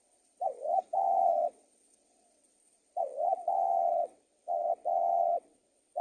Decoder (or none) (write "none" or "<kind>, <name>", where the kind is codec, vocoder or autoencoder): vocoder, WaveNeXt